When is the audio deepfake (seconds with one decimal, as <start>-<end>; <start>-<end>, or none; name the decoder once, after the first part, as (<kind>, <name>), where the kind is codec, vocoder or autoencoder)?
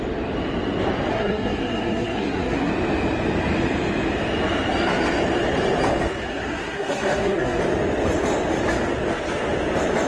1.1-2.7 (codec, SNAC); 6.3-7.6